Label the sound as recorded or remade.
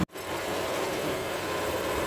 recorded